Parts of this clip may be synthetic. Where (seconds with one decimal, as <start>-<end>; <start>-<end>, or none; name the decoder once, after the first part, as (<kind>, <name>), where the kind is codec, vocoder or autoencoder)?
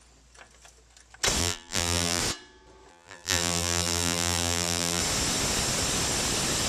1.4-2.2 (vocoder, BigVGAN v2); 2.9-5.0